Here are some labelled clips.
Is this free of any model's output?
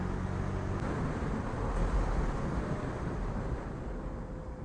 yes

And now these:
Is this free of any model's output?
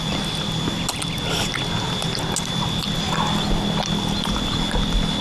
yes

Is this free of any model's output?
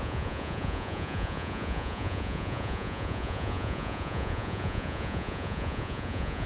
no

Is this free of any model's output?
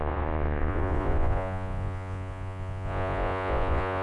no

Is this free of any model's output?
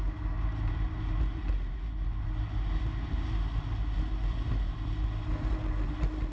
yes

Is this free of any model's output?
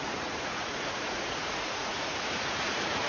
no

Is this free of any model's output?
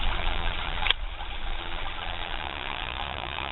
no